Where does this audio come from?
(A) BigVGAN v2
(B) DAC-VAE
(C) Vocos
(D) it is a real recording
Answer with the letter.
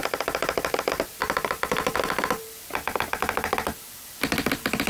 A